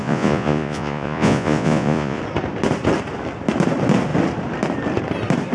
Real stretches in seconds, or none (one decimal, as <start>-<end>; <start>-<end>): 2.2-5.5